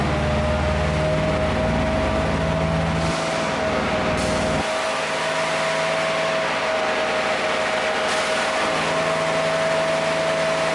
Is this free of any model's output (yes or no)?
yes